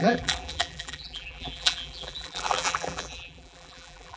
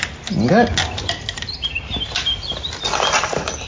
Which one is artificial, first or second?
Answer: first